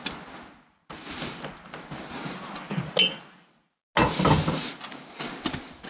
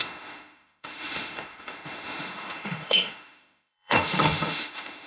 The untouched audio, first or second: first